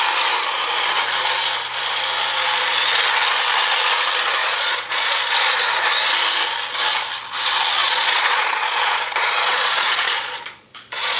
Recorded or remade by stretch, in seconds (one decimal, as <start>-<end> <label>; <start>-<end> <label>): 0.0-4.4 recorded; 4.4-5.2 remade; 5.2-7.8 recorded; 7.8-11.2 remade